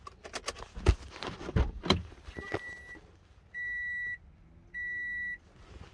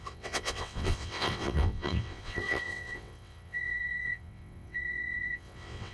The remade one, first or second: second